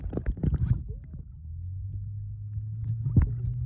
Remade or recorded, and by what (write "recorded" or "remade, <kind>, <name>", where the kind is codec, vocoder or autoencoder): recorded